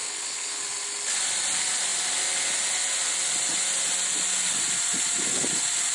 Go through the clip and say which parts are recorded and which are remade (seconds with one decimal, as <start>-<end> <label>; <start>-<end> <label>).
0.0-0.6 remade; 0.6-5.9 recorded